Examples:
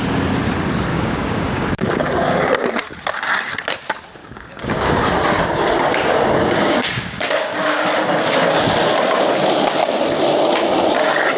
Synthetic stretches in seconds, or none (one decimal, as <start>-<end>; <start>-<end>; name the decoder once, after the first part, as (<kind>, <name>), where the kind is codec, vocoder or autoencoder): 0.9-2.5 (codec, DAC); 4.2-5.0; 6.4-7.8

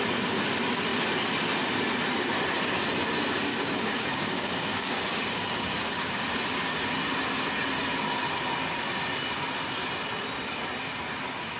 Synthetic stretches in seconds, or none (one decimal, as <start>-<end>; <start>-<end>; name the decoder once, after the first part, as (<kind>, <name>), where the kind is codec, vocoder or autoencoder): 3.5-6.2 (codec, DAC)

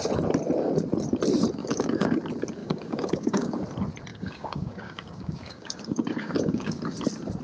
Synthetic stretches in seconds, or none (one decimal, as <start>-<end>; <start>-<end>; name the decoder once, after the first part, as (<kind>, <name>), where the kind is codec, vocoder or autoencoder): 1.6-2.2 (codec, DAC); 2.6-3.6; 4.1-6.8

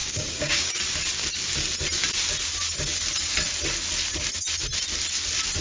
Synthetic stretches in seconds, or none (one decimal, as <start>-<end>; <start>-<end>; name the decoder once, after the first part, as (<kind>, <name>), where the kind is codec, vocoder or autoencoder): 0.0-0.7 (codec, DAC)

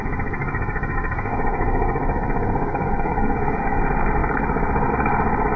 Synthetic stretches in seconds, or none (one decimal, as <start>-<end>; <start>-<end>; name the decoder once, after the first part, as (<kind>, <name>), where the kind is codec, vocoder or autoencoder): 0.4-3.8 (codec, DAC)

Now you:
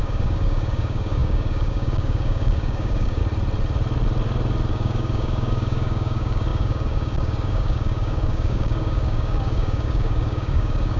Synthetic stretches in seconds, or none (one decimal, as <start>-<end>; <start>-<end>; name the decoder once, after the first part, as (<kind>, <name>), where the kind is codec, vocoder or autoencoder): 0.0-3.2 (codec, DAC); 4.7-11.0

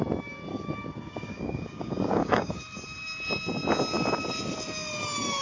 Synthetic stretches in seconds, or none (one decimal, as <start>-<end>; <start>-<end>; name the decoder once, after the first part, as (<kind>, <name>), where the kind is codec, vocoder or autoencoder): 0.5-2.6 (codec, DAC)

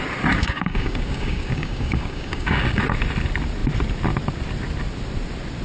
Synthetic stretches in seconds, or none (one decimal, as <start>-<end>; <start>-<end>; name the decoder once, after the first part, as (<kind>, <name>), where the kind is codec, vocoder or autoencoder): 0.4-2.8 (codec, DAC)